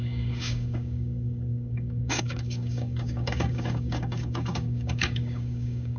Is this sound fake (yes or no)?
yes